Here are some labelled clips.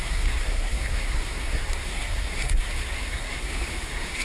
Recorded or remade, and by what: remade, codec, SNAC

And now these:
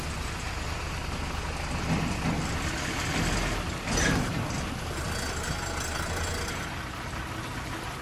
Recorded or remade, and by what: recorded